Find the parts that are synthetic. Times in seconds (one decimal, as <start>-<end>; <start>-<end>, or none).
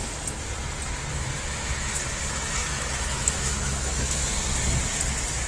1.1-2.0; 2.6-4.3